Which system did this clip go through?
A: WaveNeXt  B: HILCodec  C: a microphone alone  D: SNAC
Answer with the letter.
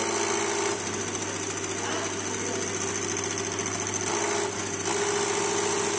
C